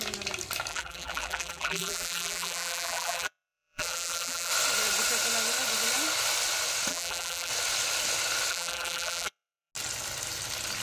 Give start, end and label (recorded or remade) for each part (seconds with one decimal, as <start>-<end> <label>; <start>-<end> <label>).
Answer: 0.0-0.7 recorded; 0.7-4.5 remade; 4.5-6.9 recorded; 6.9-7.5 remade; 7.5-8.5 recorded; 8.5-9.7 remade; 9.7-10.8 recorded